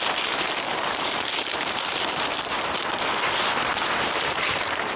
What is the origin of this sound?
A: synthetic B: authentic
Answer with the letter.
A